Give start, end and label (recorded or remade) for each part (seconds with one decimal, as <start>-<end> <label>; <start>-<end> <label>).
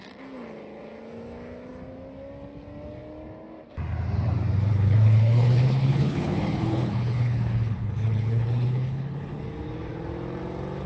0.0-4.7 recorded; 4.7-9.4 remade; 9.4-10.9 recorded